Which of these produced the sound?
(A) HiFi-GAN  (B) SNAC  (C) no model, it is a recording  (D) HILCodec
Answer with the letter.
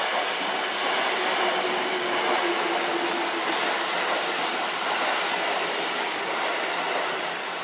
C